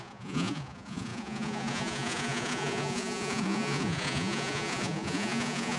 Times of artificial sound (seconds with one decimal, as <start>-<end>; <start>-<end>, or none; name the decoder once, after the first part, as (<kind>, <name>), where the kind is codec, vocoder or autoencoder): 0.0-5.8 (vocoder, Vocos)